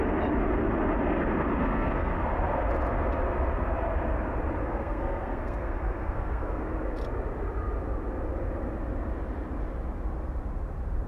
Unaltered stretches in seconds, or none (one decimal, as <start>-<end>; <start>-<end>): 0.0-1.6; 2.1-4.6; 6.6-11.1